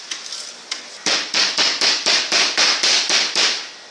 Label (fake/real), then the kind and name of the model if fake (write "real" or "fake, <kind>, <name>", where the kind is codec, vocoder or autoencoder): real